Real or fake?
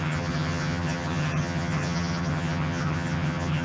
fake